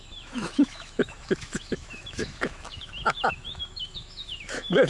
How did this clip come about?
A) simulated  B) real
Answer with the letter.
A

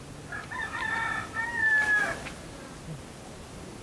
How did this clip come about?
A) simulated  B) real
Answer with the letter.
B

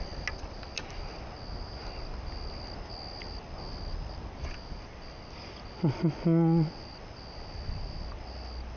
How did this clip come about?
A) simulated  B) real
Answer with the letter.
B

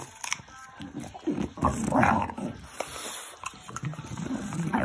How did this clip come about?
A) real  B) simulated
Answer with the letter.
A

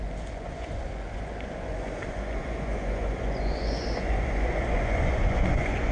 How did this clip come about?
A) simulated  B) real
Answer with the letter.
A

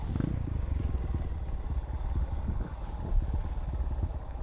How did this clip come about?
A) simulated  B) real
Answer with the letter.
B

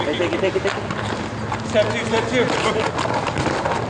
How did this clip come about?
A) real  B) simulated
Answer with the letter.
A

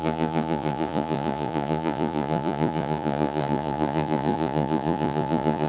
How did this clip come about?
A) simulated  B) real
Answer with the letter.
A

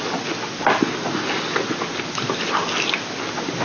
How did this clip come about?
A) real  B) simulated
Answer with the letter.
A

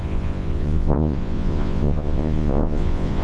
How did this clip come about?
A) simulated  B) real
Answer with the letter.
A